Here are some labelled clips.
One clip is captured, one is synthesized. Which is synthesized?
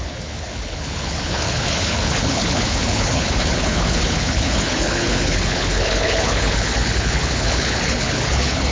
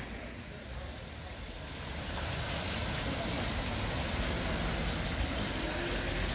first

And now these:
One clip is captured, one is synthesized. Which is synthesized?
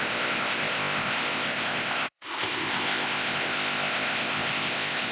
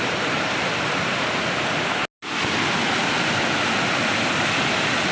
first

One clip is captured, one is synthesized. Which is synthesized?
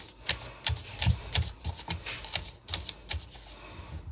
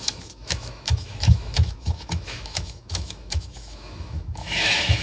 second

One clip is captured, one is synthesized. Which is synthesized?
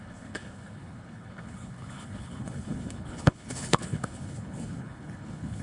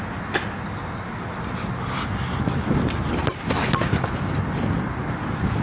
first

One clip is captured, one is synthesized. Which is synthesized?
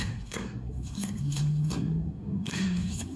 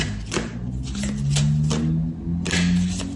first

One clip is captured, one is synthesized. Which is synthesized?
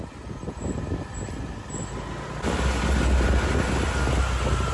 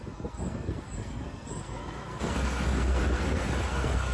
second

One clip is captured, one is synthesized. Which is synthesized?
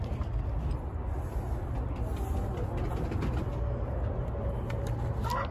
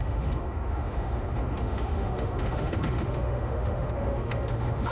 second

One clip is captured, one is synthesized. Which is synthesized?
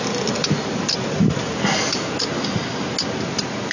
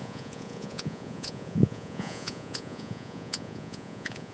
second